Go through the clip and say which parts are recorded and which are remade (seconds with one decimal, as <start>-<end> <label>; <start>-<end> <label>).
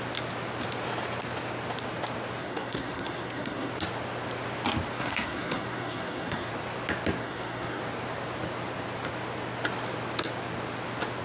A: 0.0-2.4 recorded; 2.4-3.7 remade; 3.7-5.0 recorded; 5.0-6.5 remade; 6.5-7.2 recorded; 7.2-7.8 remade; 7.8-11.2 recorded